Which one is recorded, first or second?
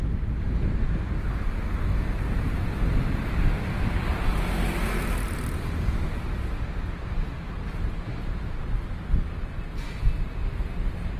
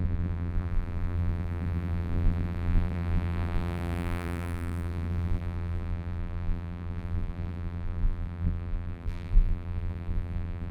first